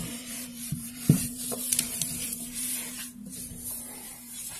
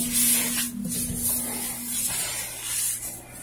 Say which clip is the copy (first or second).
first